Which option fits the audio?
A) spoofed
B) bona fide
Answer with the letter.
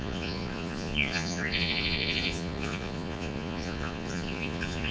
A